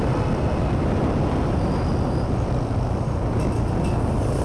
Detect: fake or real real